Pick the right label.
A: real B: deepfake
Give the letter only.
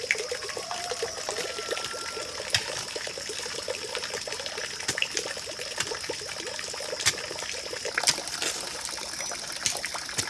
A